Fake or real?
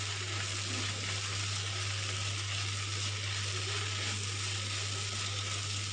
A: real